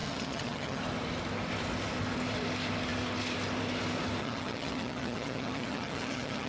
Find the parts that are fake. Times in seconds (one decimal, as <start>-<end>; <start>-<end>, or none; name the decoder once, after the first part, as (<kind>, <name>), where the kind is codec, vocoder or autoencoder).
0.0-0.8 (vocoder, HiFi-GAN); 4.2-6.5